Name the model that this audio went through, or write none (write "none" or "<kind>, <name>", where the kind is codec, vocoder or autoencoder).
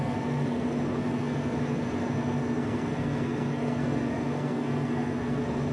codec, SNAC